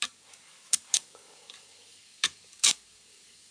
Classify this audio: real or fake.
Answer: fake